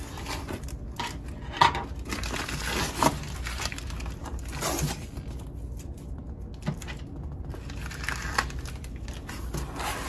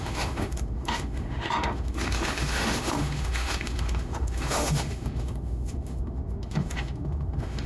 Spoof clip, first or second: second